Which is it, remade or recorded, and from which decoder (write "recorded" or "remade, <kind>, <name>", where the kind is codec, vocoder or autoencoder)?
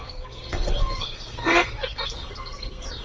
remade, codec, SNAC